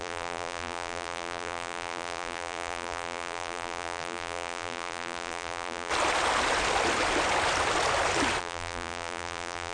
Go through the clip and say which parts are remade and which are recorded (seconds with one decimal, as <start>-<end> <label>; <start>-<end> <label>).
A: 0.0-5.9 remade; 5.9-8.4 recorded; 8.4-9.7 remade